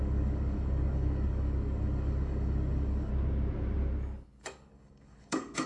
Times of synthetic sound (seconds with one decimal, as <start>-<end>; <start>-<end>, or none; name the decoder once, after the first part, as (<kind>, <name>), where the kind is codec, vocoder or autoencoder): 0.0-3.1 (codec, DAC); 4.4-5.7